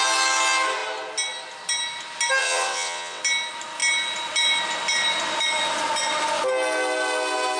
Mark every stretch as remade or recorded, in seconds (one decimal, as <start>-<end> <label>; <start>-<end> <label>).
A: 0.0-2.4 recorded; 2.4-3.2 remade; 3.2-7.6 recorded